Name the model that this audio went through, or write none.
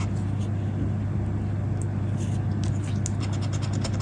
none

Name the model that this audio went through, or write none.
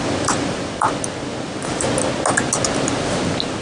none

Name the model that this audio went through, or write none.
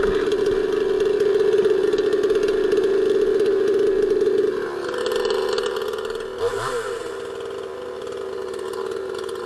none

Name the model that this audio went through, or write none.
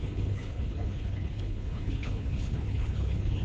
codec, HILCodec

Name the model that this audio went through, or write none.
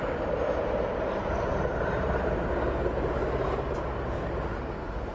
none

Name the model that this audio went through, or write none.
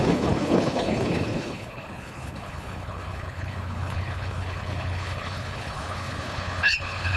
codec, HILCodec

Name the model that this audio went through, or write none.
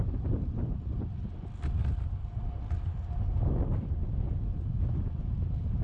none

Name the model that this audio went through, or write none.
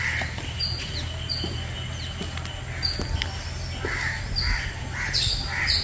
none